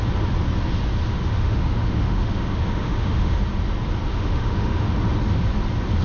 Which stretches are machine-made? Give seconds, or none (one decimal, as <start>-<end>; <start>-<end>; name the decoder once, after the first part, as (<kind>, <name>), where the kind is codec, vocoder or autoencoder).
1.1-3.4 (autoencoder, DAC-VAE); 4.1-4.9

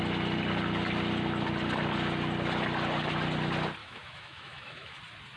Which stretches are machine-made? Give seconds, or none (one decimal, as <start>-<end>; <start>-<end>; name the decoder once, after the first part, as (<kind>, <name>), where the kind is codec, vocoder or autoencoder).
3.8-5.0 (autoencoder, DAC-VAE)

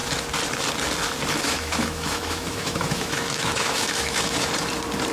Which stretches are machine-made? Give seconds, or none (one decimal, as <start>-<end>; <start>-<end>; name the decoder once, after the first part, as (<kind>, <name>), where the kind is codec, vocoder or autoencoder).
1.4-4.5 (autoencoder, DAC-VAE)

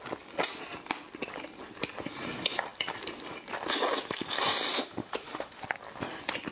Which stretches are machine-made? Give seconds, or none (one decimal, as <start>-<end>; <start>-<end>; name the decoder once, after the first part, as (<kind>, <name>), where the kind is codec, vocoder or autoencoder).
4.7-5.6 (autoencoder, DAC-VAE)

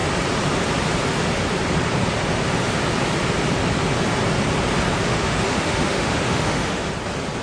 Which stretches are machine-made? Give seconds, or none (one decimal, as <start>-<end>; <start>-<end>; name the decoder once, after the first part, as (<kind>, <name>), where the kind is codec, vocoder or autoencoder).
5.1-6.9 (autoencoder, DAC-VAE)

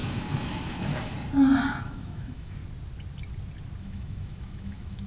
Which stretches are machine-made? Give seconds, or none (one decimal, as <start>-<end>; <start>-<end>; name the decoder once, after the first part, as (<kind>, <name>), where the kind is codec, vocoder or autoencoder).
0.0-0.9 (autoencoder, DAC-VAE); 1.8-2.6; 3.8-5.1

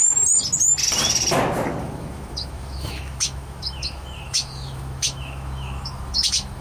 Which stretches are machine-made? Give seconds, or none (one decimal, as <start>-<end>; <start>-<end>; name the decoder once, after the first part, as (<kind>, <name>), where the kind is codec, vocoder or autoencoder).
1.8-6.6 (autoencoder, DAC-VAE)

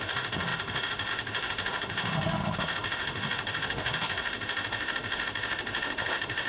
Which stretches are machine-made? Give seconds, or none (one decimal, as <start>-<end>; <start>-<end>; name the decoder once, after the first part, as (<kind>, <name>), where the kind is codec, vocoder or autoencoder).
0.0-6.5 (autoencoder, DAC-VAE)